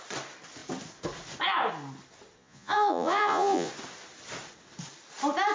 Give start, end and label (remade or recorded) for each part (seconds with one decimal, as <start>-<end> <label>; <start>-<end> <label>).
0.0-2.4 recorded; 2.4-3.7 remade; 3.7-5.5 recorded